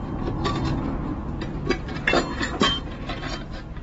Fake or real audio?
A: real